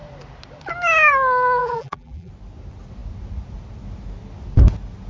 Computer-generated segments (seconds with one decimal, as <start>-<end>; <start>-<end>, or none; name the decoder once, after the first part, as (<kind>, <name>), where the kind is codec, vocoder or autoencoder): 1.6-2.3 (vocoder, BigVGAN v2)